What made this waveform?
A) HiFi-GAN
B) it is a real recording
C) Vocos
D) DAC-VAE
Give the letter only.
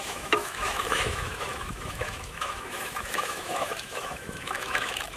D